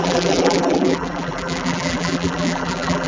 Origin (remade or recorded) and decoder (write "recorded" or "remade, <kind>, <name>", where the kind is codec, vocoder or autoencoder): remade, vocoder, BigVGAN v2